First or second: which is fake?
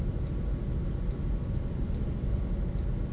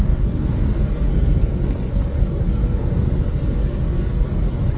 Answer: second